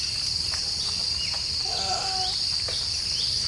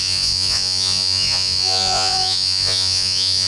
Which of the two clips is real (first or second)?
first